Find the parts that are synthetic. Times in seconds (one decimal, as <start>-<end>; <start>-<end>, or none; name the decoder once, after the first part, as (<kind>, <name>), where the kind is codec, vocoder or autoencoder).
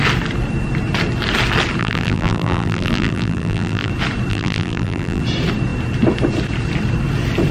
1.8-3.9 (vocoder, BigVGAN v2); 4.3-5.2